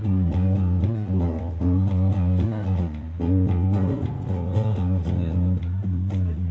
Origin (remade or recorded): remade